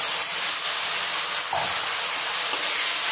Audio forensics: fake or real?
real